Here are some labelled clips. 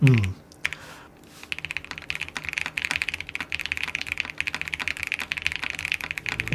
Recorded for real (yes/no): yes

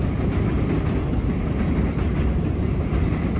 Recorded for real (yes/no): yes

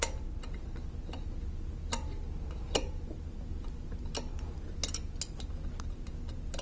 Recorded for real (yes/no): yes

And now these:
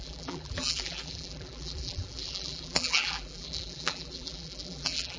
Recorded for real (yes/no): no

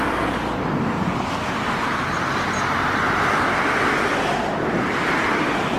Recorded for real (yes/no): yes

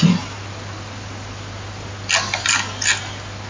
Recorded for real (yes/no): yes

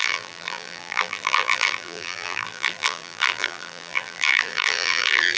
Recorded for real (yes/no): no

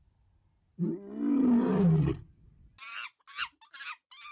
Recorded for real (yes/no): yes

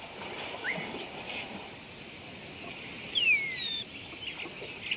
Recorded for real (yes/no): yes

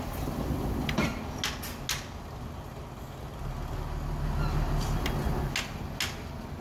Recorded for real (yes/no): yes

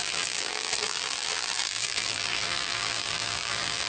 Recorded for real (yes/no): no